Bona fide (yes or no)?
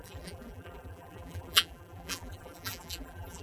no